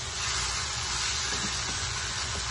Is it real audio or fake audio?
fake